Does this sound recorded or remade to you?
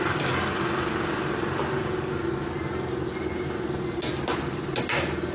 recorded